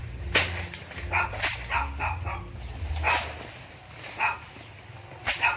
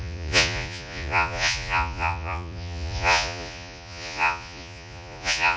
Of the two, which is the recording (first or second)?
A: first